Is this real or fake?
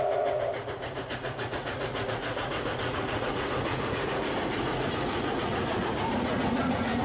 fake